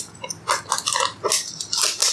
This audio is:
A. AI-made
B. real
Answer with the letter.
B